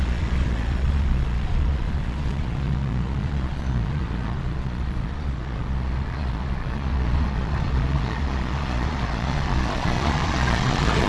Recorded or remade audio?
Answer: remade